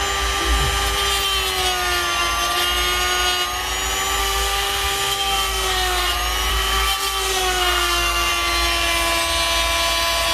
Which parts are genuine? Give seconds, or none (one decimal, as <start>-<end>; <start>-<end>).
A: 0.0-4.2; 6.1-6.5; 8.3-10.3